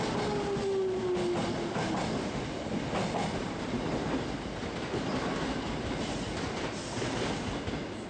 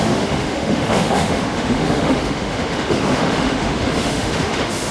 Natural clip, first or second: first